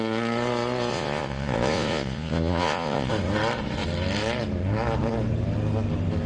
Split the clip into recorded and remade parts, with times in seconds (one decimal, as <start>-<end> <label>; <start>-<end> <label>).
0.0-0.9 recorded; 0.9-3.1 remade; 3.1-6.3 recorded